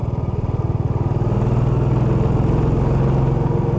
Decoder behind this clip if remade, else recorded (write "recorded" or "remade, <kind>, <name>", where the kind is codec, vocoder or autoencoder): recorded